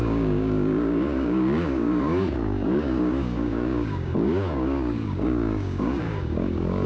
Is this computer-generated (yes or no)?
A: yes